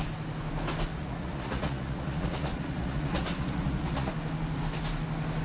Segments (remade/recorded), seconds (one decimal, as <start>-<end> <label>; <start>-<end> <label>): 0.0-0.9 recorded; 0.9-4.1 remade; 4.1-5.4 recorded